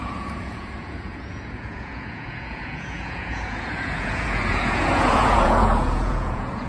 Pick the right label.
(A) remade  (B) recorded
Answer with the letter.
A